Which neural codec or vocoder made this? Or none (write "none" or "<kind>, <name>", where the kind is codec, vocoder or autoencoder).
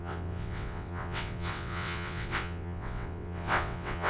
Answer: vocoder, WaveNeXt